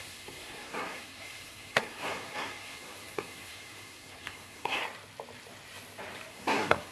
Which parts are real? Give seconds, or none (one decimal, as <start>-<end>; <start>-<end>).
4.8-6.3